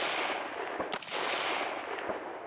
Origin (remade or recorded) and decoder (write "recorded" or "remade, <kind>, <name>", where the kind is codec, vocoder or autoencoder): recorded